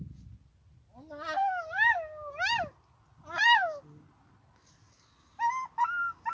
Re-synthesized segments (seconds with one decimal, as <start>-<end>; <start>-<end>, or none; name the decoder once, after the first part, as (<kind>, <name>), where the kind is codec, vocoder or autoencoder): none